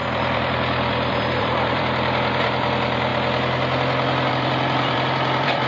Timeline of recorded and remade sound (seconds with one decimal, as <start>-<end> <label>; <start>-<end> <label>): 0.0-3.1 remade; 3.1-4.3 recorded; 4.3-5.7 remade